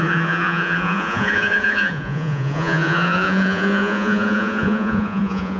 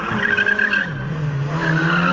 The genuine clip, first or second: second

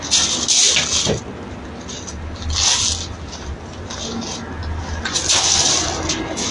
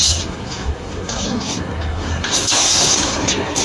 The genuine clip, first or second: first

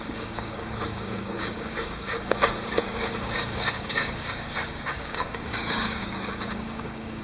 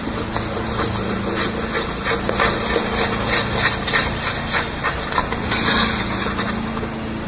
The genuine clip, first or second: second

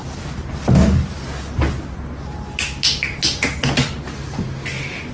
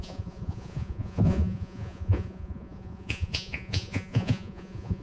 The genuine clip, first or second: first